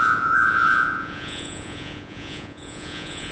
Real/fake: fake